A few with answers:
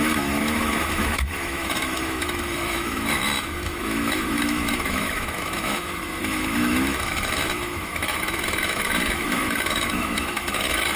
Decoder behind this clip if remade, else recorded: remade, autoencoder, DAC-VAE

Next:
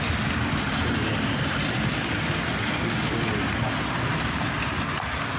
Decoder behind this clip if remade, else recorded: recorded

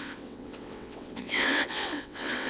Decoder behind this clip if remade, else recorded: remade, vocoder, WaveNeXt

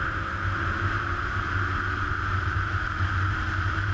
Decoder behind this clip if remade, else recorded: recorded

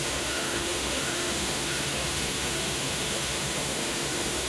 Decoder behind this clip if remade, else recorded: remade, autoencoder, DAC-VAE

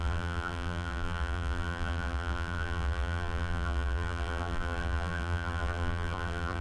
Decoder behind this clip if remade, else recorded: remade, vocoder, BigVGAN v2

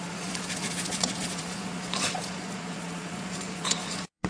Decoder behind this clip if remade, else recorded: remade, vocoder, Vocos